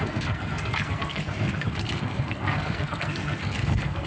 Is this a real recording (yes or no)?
no